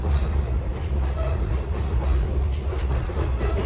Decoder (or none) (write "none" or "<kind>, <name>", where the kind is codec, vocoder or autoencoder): vocoder, Vocos